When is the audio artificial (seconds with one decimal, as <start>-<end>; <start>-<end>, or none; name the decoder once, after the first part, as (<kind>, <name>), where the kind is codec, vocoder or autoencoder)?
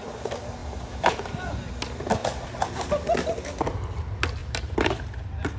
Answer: 0.6-1.5 (vocoder, BigVGAN v2); 4.4-5.0